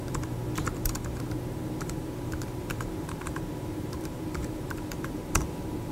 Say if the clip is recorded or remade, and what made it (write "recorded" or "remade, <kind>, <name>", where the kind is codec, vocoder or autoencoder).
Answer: remade, vocoder, BigVGAN v2